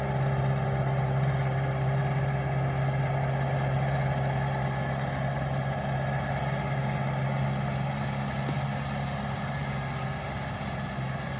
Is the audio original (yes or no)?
yes